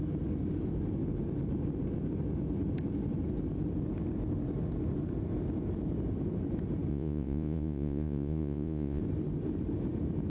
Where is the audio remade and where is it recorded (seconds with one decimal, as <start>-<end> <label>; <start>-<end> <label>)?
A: 0.0-6.9 recorded; 6.9-9.0 remade; 9.0-10.3 recorded